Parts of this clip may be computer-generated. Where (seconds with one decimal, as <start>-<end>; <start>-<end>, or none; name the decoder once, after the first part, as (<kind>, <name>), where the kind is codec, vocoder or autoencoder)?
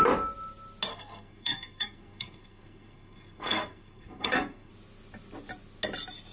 0.9-4.7 (codec, SNAC)